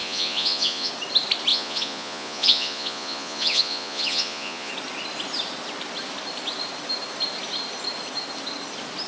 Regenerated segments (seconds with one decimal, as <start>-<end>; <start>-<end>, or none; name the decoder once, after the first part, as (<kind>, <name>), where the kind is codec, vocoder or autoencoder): 0.0-0.9 (vocoder, Vocos); 1.5-4.7